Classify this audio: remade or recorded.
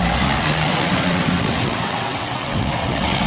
remade